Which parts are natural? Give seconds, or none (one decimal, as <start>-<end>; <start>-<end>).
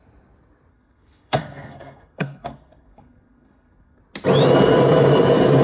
0.0-0.7; 4.0-5.6